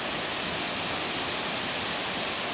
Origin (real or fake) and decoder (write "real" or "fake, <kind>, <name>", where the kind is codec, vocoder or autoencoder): real